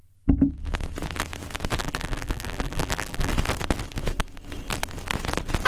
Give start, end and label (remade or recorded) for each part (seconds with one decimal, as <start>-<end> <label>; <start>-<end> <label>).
0.0-1.8 recorded; 1.8-3.3 remade; 3.3-5.7 recorded

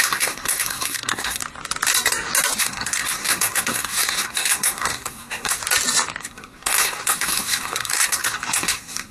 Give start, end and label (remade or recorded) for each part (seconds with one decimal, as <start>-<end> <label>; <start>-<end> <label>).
0.0-1.4 remade; 1.4-2.6 recorded; 2.6-5.6 remade; 5.6-6.2 recorded; 6.2-9.1 remade

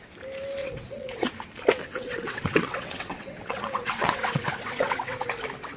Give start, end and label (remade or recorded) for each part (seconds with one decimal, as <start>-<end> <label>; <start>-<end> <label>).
0.0-0.6 recorded; 0.6-1.3 remade; 1.3-1.8 recorded; 1.8-5.3 remade; 5.3-5.8 recorded